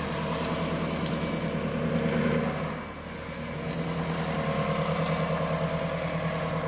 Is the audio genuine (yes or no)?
yes